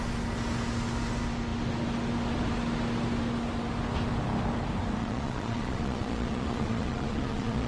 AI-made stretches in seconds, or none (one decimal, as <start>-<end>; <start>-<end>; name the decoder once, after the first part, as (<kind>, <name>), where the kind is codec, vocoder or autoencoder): 5.0-7.7 (vocoder, Vocos)